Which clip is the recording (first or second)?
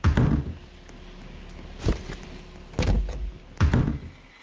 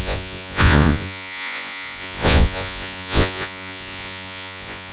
first